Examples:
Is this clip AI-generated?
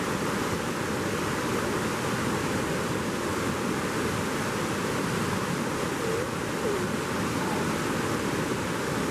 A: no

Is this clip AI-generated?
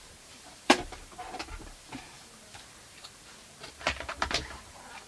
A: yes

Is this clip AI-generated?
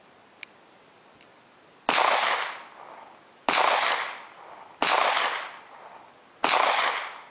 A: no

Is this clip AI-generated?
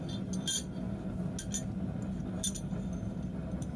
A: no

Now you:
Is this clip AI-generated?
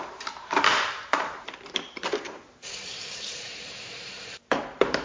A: yes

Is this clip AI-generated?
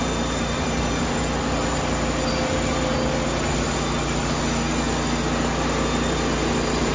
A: no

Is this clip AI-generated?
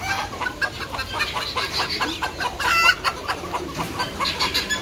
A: yes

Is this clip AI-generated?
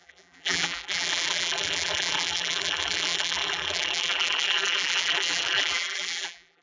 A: yes